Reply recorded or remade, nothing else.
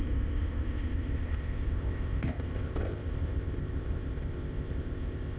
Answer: remade